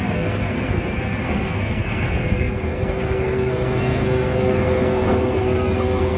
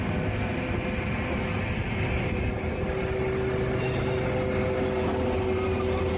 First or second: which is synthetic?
first